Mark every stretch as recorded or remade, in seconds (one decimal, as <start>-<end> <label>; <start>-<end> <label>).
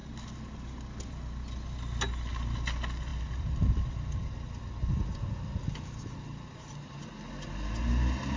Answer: 0.0-8.4 recorded